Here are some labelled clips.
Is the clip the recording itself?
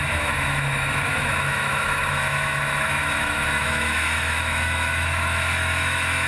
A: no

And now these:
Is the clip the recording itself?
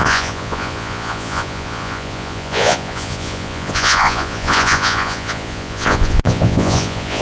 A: no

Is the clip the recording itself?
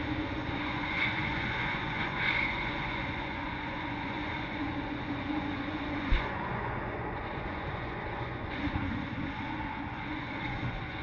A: no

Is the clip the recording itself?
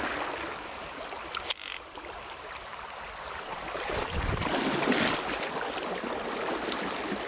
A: yes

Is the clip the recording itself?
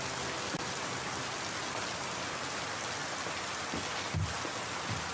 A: yes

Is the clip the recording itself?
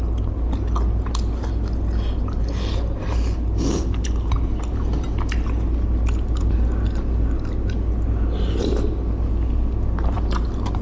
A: yes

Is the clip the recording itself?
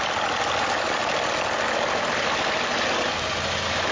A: yes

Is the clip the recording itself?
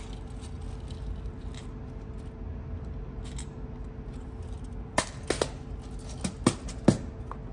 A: yes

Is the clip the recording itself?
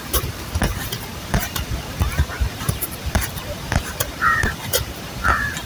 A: no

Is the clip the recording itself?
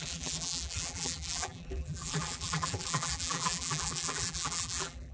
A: no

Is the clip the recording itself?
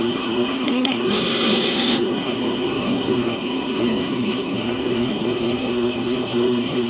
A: no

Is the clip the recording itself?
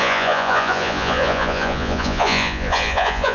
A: no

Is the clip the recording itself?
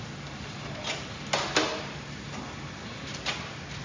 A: yes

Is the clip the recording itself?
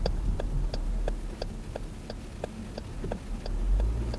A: yes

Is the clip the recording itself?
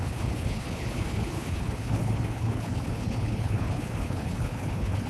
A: no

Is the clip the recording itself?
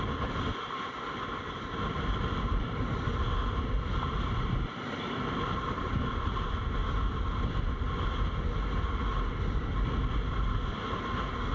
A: yes